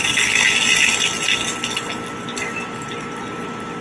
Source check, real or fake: real